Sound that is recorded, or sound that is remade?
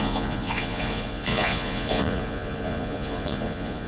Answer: remade